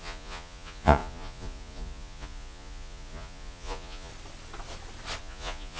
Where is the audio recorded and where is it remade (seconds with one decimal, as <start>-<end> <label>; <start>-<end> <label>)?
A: 0.0-4.1 remade; 4.1-5.2 recorded; 5.2-5.8 remade